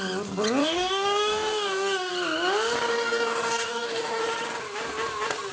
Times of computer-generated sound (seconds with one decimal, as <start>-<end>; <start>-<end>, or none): 0.6-2.1; 2.9-4.2